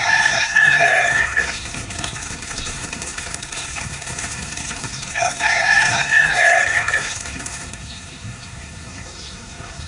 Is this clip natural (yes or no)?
no